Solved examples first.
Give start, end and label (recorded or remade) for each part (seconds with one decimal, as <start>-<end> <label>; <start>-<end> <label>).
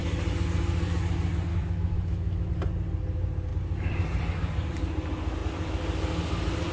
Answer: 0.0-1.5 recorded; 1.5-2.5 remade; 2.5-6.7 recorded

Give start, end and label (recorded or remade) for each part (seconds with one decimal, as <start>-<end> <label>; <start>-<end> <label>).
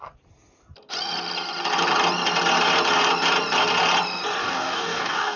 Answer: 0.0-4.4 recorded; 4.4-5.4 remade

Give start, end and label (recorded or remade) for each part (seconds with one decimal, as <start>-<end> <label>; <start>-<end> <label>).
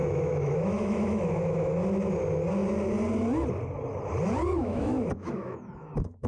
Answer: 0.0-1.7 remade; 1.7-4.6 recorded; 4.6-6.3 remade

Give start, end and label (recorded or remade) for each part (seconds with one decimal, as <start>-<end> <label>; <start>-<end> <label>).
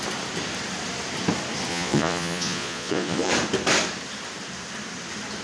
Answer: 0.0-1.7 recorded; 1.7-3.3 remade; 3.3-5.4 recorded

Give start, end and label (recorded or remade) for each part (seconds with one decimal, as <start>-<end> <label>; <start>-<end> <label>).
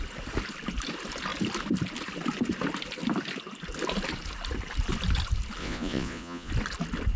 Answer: 0.0-5.6 recorded; 5.6-6.5 remade; 6.5-7.2 recorded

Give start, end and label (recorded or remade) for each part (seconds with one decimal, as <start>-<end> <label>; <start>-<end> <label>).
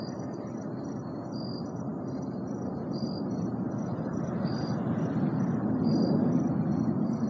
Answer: 0.0-4.1 recorded; 4.1-5.5 remade; 5.5-7.3 recorded